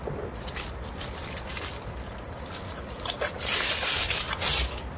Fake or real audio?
real